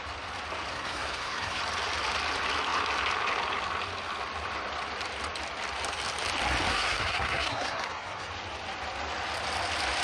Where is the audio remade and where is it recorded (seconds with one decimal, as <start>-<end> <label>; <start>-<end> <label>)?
0.0-0.7 recorded; 0.7-1.6 remade; 1.6-6.7 recorded; 6.7-8.3 remade; 8.3-10.0 recorded